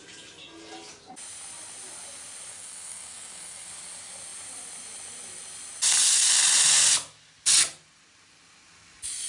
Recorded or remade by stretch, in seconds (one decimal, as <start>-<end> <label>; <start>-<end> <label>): 0.0-2.5 recorded; 2.5-3.7 remade; 3.7-9.3 recorded